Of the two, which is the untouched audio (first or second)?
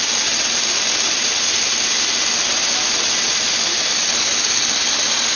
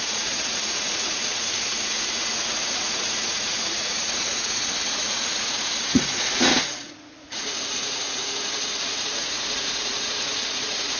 first